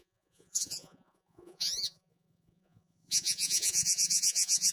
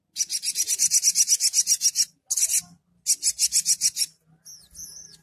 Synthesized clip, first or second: first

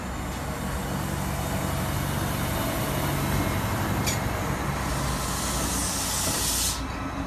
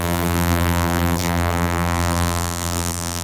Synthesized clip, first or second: second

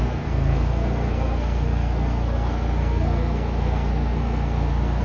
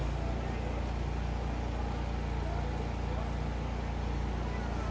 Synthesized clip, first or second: first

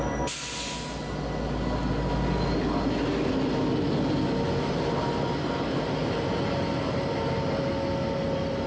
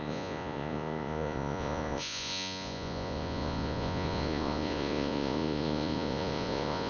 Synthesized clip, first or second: second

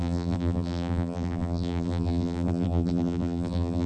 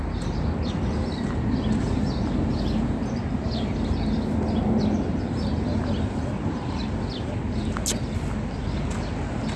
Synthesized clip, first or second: first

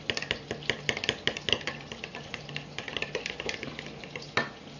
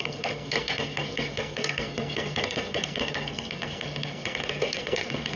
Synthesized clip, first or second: second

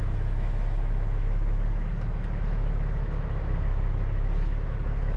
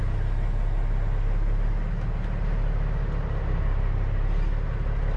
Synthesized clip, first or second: first